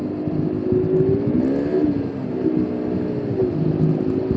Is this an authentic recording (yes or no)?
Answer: yes